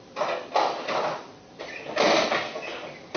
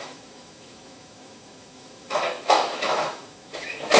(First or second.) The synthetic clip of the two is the second